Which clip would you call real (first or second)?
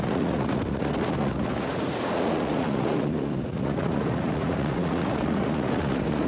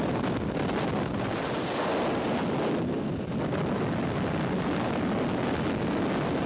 second